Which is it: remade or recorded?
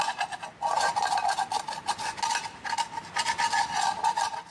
recorded